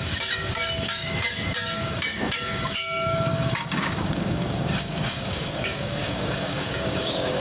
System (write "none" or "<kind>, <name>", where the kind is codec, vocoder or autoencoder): codec, DAC